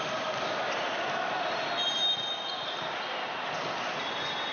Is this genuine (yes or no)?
yes